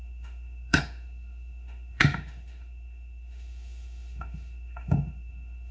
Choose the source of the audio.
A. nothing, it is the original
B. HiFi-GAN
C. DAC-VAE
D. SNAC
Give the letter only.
C